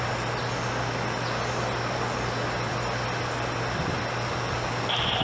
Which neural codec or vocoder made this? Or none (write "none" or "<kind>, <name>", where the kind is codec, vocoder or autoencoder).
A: none